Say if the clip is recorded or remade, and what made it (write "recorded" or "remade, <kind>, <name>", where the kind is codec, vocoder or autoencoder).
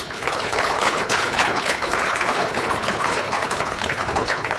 remade, codec, HILCodec